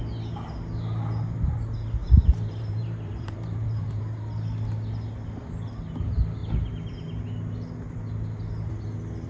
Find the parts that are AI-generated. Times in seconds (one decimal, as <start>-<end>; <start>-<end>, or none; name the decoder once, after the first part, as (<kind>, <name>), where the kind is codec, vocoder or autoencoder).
2.0-4.0 (vocoder, BigVGAN v2)